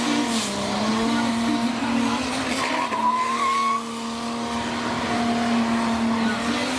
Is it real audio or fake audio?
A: real